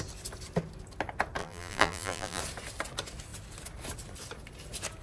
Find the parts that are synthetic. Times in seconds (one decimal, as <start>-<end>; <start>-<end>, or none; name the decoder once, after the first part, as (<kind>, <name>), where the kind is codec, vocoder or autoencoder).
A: 1.4-2.4 (vocoder, BigVGAN v2)